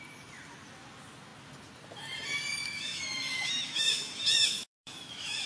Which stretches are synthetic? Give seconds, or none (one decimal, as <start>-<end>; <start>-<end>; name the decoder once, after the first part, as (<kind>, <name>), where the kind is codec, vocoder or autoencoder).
2.5-5.5 (autoencoder, DAC-VAE)